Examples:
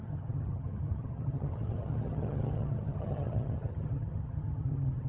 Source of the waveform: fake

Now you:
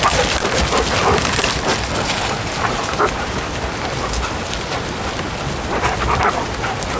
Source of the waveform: real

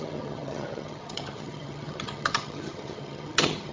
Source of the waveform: fake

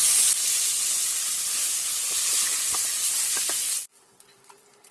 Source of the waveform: real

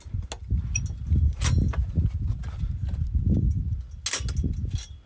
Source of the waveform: real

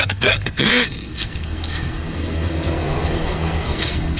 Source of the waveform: fake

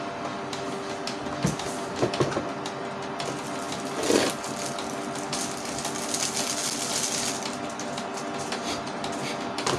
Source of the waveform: real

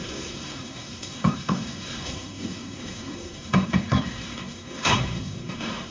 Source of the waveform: fake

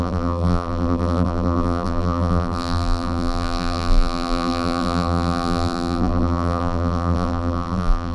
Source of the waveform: fake